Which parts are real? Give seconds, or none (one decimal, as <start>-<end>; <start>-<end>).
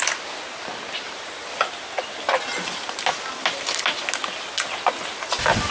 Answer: 0.0-5.7